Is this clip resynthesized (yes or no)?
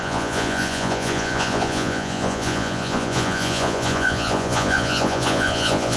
yes